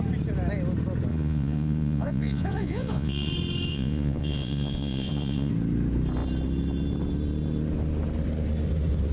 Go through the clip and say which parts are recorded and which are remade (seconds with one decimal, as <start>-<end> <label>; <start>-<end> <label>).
0.0-1.1 recorded; 1.1-3.3 remade; 3.3-3.7 recorded; 3.7-5.5 remade; 5.5-9.1 recorded